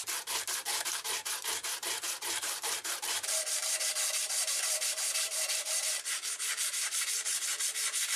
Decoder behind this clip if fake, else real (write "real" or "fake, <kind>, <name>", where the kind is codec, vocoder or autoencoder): fake, vocoder, BigVGAN v2